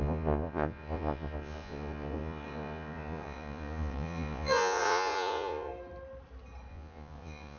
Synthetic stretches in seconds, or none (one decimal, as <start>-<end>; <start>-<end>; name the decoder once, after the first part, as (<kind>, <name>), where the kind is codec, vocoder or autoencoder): 0.0-5.7 (vocoder, Vocos); 6.7-7.6